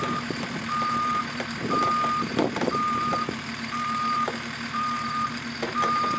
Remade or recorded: remade